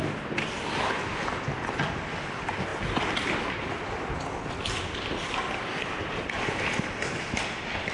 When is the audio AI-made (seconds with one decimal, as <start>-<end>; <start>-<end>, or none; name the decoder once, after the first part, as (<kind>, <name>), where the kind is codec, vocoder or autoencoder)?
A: none